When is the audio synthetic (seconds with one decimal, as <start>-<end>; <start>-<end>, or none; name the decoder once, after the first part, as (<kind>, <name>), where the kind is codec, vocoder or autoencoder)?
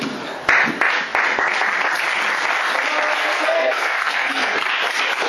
3.2-4.7 (codec, SNAC)